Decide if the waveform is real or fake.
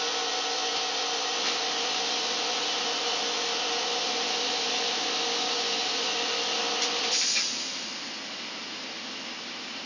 real